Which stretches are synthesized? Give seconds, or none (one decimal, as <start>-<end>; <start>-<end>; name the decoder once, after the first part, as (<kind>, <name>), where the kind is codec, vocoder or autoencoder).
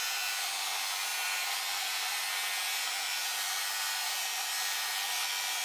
none